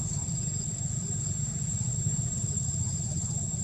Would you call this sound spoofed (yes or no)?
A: yes